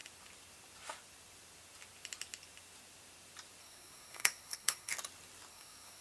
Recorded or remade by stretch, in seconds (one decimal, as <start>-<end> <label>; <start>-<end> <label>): 0.0-3.6 recorded; 3.6-4.9 remade; 4.9-5.5 recorded; 5.5-6.0 remade